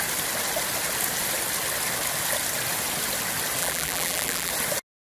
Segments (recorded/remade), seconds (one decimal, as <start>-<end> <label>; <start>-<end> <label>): 0.0-3.6 recorded; 3.6-4.5 remade; 4.5-5.2 recorded